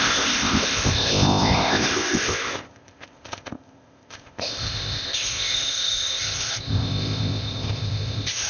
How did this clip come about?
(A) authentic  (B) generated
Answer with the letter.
B